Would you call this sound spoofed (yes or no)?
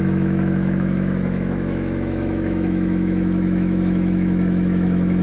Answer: yes